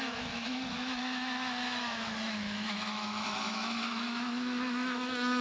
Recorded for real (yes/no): no